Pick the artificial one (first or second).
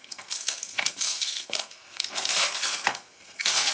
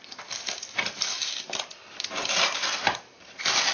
first